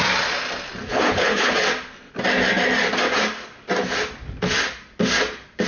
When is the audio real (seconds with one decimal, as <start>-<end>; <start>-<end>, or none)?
0.0-0.9; 1.5-5.7